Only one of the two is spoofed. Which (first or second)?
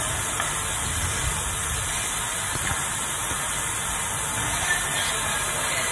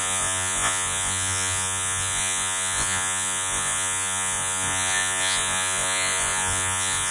second